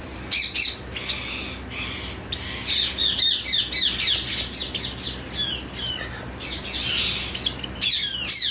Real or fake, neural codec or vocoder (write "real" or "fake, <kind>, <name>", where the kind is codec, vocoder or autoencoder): real